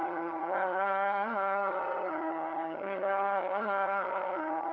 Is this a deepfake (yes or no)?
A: yes